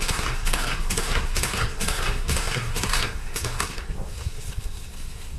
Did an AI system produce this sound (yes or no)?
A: yes